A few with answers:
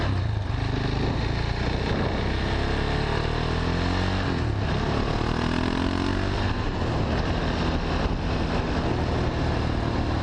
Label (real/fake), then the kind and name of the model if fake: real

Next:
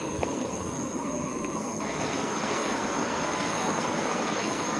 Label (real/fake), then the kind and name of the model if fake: fake, codec, SNAC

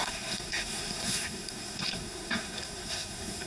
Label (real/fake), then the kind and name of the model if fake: fake, codec, SNAC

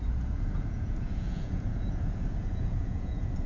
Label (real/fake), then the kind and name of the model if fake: fake, vocoder, Vocos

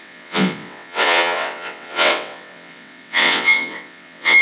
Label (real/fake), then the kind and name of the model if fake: fake, vocoder, WaveNeXt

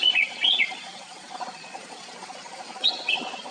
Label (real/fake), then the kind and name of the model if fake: fake, vocoder, Vocos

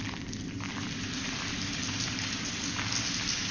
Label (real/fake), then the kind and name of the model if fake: real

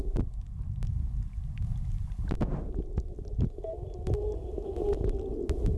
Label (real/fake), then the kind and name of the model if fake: real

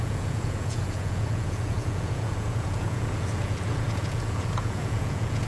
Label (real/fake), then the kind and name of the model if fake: fake, vocoder, Vocos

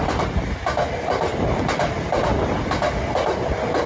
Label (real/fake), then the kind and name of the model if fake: real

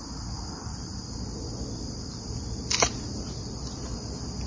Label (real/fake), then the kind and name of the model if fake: real